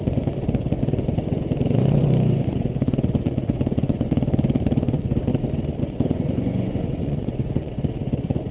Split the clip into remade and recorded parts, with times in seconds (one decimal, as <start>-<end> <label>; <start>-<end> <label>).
0.0-5.3 remade; 5.3-5.8 recorded; 5.8-8.5 remade